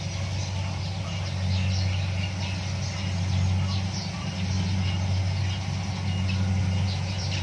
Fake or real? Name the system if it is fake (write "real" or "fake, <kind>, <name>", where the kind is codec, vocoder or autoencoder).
real